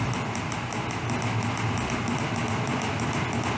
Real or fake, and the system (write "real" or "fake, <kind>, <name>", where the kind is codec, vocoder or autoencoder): real